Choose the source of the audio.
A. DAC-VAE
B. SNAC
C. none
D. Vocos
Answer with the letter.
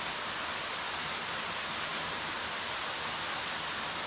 C